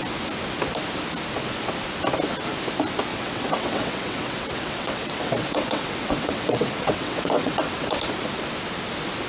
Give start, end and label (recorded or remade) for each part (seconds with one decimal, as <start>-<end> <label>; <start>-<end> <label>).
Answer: 0.0-3.1 recorded; 3.1-8.0 remade; 8.0-9.3 recorded